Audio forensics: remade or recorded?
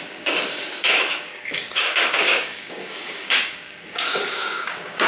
remade